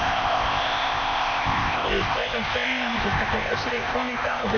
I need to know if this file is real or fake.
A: fake